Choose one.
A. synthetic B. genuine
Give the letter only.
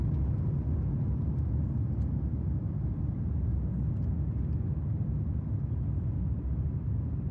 B